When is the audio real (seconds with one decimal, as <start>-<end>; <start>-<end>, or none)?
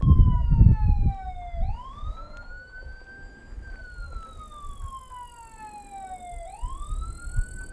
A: 0.0-7.7